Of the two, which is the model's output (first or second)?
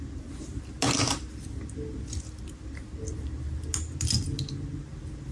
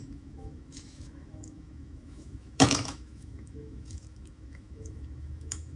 second